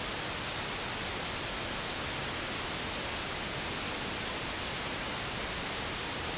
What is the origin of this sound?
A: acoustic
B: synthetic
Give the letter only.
A